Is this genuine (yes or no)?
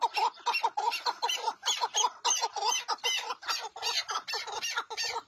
yes